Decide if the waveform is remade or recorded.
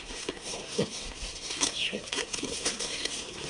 remade